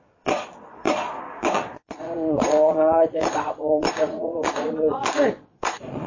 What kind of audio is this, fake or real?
fake